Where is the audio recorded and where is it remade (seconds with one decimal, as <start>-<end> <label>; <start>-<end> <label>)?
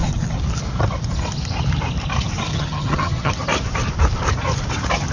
0.0-2.5 recorded; 2.5-3.3 remade; 3.3-5.1 recorded